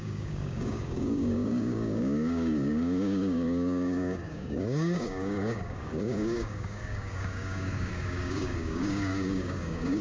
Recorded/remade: remade